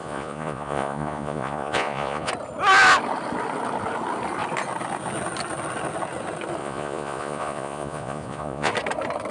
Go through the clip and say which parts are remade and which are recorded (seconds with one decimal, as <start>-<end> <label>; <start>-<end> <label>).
0.0-2.3 remade; 2.3-6.6 recorded; 6.6-8.7 remade; 8.7-9.3 recorded